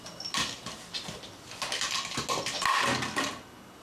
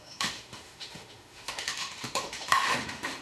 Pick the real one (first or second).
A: first